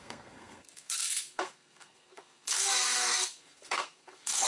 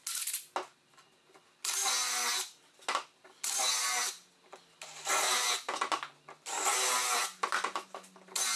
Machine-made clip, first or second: first